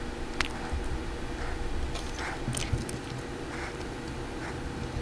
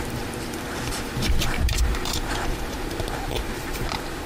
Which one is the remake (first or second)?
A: second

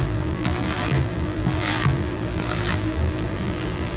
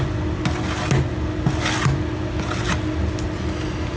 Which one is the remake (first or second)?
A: first